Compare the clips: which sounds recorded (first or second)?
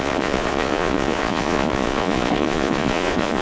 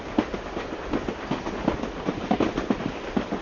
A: second